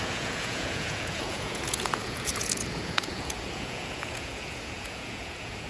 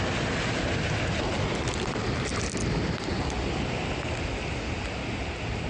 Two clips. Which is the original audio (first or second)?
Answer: second